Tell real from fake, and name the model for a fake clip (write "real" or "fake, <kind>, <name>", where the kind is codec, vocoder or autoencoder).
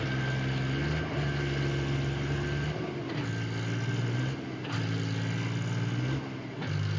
real